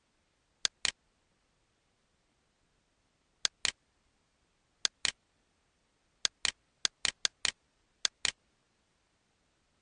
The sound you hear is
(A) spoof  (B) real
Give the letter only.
B